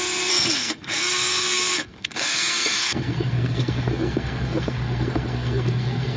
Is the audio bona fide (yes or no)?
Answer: no